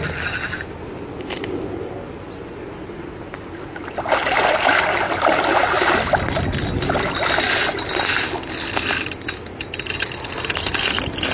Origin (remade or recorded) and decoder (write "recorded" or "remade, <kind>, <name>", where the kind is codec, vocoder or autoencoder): recorded